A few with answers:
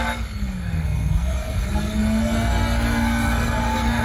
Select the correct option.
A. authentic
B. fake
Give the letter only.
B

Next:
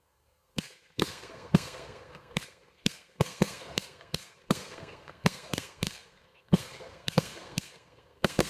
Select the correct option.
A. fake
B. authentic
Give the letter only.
A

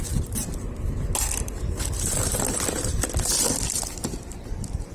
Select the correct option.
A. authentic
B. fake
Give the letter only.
A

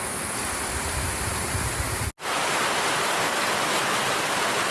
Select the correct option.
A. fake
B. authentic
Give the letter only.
B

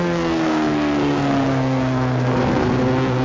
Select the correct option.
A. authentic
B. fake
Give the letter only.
B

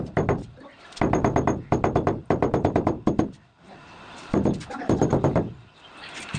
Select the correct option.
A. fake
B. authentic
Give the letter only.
B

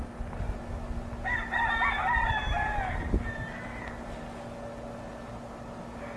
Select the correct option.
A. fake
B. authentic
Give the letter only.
B